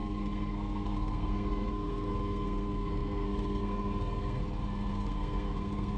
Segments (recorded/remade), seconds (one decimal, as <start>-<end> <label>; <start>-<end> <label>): 0.0-4.4 remade; 4.4-4.9 recorded; 4.9-6.0 remade